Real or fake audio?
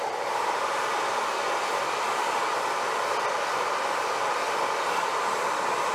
fake